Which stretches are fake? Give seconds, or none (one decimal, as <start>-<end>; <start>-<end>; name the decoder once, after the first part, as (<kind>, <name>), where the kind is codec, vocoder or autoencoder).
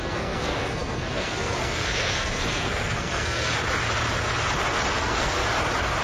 0.0-3.5 (codec, SNAC); 5.0-5.4